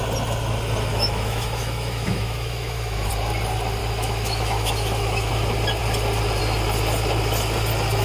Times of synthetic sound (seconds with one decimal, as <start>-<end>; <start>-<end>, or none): 0.9-3.1; 3.8-5.3

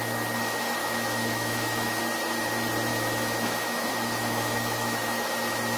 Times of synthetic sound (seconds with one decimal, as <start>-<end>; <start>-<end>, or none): 0.8-2.0; 2.9-5.3

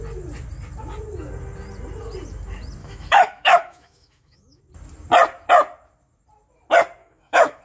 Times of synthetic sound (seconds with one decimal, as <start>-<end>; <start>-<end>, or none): 2.8-4.6; 7.0-7.6

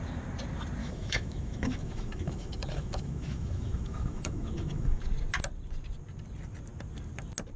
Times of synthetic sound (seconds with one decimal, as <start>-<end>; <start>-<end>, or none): 0.8-5.0

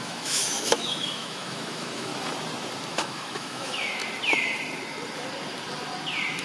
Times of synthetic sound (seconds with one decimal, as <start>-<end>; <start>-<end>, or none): 0.0-2.1; 2.9-4.0

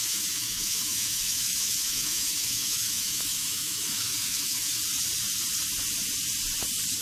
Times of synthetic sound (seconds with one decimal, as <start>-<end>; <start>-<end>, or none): 0.0-4.8